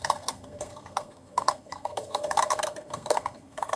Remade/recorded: remade